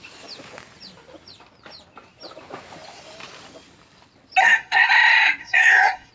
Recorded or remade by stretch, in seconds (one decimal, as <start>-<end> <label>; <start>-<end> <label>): 0.0-4.4 recorded; 4.4-4.9 remade; 4.9-5.4 recorded; 5.4-6.1 remade